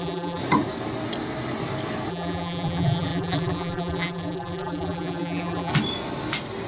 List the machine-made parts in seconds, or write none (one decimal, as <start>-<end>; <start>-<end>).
0.0-0.4; 2.1-5.7